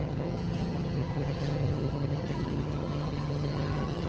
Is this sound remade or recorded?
remade